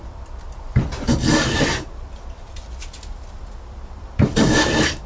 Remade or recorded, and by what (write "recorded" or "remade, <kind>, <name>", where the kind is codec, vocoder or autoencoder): recorded